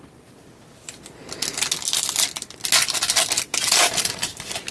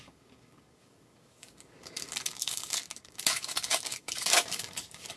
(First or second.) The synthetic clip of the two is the second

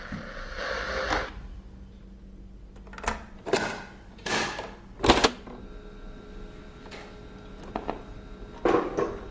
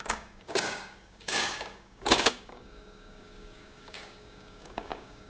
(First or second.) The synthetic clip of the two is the second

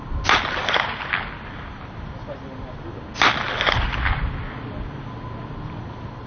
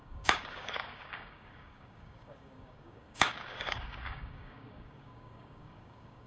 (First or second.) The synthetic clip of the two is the second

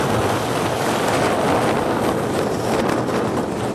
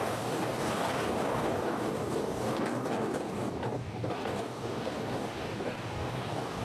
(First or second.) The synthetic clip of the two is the second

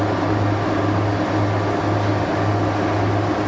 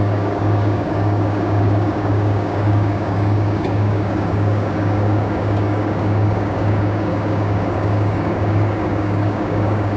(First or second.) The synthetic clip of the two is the second